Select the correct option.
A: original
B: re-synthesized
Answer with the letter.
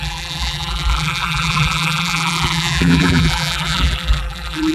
B